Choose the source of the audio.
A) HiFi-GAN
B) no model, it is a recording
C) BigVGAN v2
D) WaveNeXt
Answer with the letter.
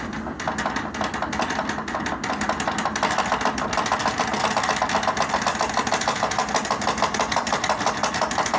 B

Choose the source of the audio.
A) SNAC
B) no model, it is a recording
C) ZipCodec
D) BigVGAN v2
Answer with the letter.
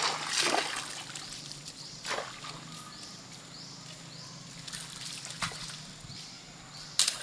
B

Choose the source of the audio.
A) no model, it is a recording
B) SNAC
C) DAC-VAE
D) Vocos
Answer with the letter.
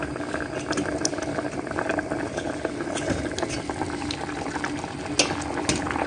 A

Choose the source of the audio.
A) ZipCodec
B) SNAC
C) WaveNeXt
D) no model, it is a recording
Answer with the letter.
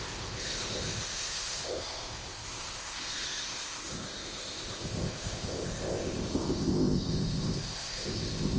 A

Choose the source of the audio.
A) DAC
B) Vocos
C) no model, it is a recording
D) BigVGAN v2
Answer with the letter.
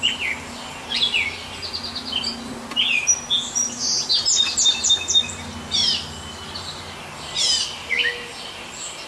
C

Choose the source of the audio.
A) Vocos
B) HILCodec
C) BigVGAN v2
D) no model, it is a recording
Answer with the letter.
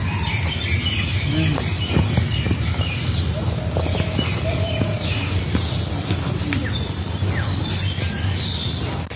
D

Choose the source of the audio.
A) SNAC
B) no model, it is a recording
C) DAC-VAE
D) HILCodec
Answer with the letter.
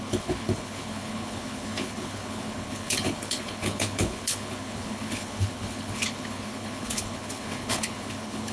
D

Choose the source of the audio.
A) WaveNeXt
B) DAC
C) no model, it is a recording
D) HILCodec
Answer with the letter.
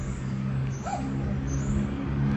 B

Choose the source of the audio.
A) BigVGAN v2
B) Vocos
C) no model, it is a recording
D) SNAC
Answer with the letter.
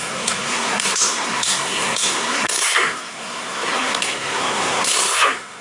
D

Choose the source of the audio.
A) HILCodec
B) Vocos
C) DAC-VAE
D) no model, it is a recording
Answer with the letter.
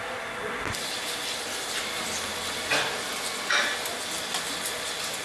D